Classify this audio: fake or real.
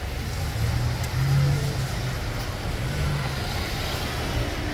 real